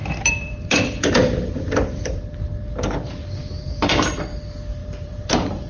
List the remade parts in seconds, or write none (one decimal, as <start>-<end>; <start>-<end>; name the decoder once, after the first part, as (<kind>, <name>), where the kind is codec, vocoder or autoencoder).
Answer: 0.0-1.1 (vocoder, BigVGAN v2); 3.2-4.2; 4.8-5.7